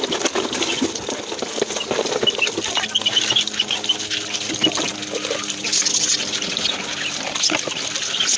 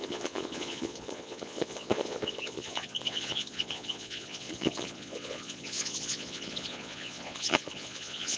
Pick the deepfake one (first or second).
second